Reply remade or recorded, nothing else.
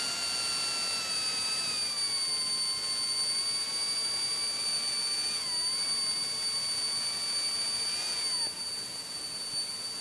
recorded